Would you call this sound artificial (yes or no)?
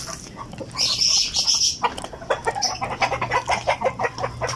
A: no